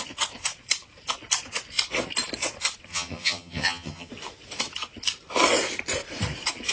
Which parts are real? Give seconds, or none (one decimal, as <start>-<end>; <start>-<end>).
0.0-2.9; 4.1-6.7